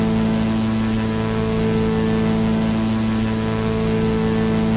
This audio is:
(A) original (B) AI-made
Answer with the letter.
A